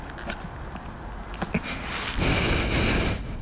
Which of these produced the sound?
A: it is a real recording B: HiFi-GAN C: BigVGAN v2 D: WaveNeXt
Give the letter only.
A